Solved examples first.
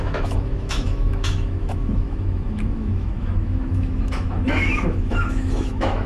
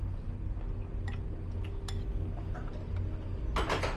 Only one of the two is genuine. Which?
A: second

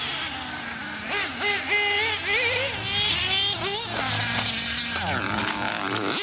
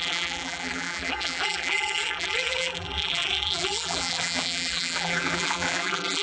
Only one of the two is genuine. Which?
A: first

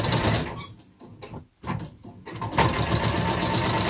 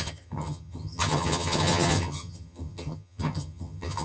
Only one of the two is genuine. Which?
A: first